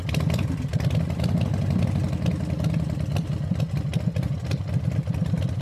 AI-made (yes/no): no